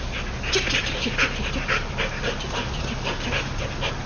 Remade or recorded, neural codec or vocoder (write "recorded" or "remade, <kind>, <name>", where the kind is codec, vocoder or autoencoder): recorded